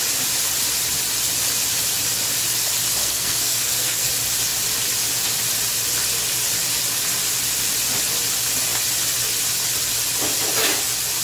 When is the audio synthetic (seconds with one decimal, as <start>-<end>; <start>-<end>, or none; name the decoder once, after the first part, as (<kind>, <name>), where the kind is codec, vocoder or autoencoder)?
3.0-4.1 (codec, SNAC)